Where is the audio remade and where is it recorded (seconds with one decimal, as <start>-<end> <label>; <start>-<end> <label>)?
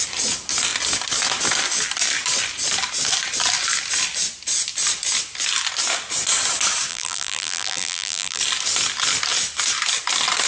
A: 0.0-6.9 recorded; 6.9-8.4 remade; 8.4-10.5 recorded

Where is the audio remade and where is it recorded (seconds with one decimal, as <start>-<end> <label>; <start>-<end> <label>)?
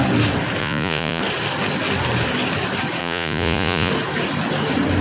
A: 0.0-0.6 recorded; 0.6-1.2 remade; 1.2-3.0 recorded; 3.0-3.9 remade; 3.9-5.0 recorded